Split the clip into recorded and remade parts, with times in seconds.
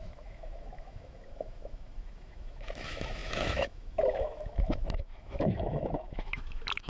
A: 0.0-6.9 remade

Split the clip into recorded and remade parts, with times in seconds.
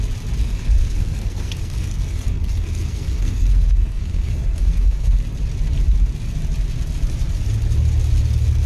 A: 0.0-0.4 recorded; 0.4-5.3 remade; 5.3-8.7 recorded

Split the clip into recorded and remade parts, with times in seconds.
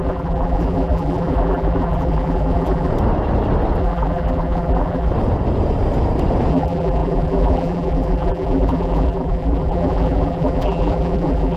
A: 0.0-2.9 remade; 2.9-3.8 recorded; 3.8-5.1 remade; 5.1-6.5 recorded; 6.5-11.6 remade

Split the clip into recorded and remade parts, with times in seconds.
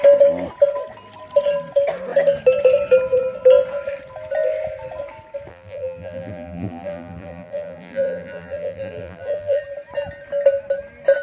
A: 0.0-5.5 recorded; 5.5-9.6 remade; 9.6-11.2 recorded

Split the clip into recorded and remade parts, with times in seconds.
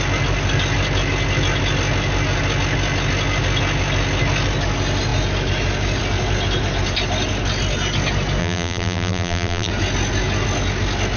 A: 0.0-8.4 recorded; 8.4-9.7 remade; 9.7-11.2 recorded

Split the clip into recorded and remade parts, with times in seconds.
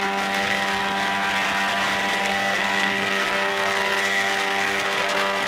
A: 0.0-0.8 remade; 0.8-2.2 recorded; 2.2-5.5 remade